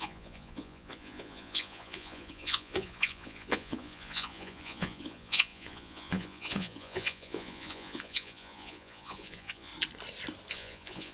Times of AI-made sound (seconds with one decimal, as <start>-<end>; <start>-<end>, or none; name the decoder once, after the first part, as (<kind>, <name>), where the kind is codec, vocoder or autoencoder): 0.0-9.7 (vocoder, Vocos); 10.5-11.1